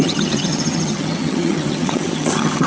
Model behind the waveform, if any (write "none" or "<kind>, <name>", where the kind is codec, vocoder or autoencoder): vocoder, HiFi-GAN